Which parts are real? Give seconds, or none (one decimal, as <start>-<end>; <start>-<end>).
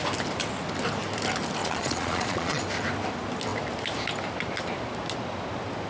0.0-1.6; 2.6-5.9